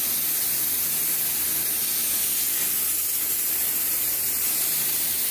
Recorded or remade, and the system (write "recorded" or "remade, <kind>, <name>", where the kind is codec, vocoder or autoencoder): recorded